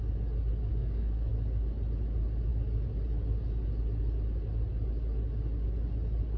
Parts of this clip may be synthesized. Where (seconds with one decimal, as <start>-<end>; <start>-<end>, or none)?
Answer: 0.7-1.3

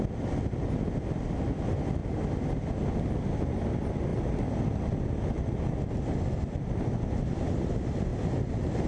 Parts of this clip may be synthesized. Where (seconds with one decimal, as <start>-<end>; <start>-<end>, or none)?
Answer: none

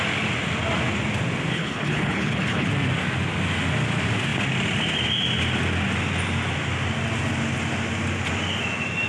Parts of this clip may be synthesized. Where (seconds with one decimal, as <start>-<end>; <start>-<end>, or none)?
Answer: 1.5-2.7